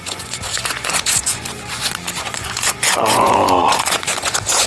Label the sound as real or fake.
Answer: fake